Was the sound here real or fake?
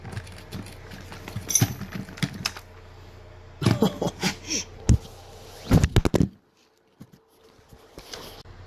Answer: real